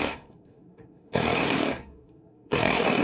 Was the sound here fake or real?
fake